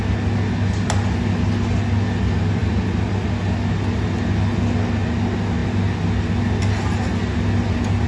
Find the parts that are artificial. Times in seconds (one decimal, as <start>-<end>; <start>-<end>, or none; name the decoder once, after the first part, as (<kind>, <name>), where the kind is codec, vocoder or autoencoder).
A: none